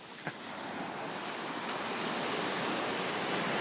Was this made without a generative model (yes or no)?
yes